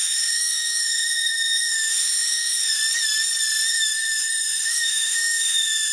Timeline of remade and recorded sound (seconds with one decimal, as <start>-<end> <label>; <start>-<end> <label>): 0.0-2.8 remade; 2.8-3.7 recorded; 3.7-5.9 remade